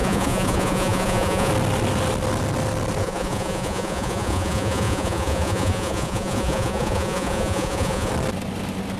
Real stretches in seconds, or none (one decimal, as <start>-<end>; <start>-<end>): 1.5-3.0; 8.1-9.0